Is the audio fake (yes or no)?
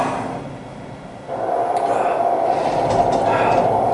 no